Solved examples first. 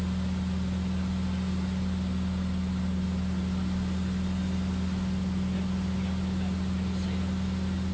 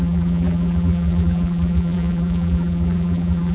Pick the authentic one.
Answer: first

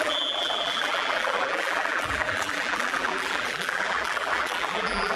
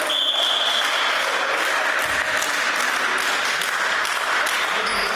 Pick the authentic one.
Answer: second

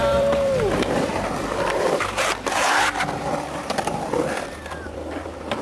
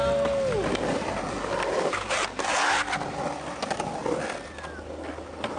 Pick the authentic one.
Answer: second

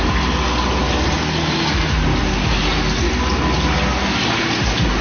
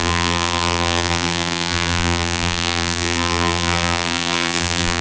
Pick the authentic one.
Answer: first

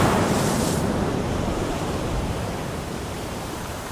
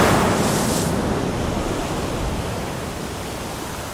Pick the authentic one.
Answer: second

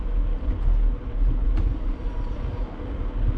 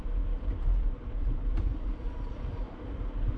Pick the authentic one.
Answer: first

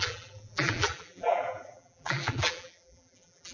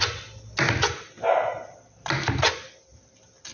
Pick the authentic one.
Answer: second